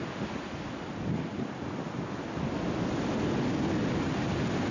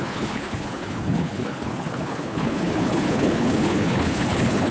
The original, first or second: first